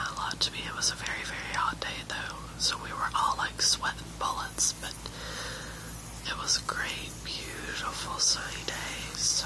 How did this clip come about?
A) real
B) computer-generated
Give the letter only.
A